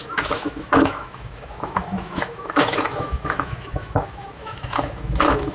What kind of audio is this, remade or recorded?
remade